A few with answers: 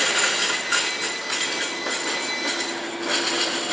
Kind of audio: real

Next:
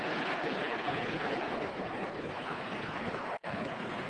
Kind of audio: fake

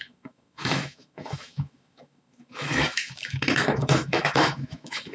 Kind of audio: fake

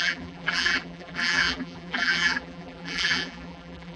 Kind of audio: fake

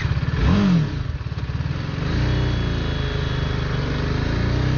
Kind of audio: real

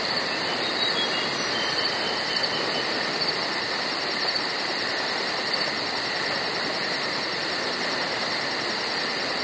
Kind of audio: real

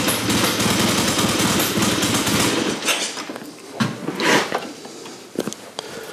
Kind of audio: real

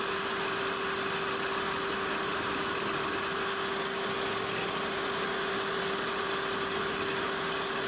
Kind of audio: real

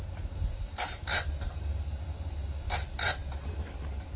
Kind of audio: real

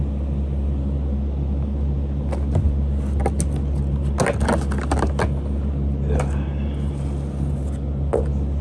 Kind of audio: real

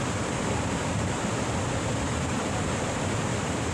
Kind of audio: real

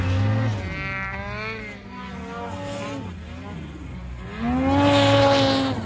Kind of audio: real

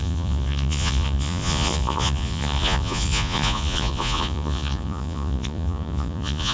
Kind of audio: fake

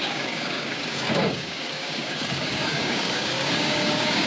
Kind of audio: fake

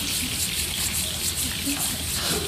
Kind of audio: real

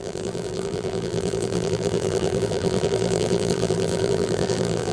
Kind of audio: fake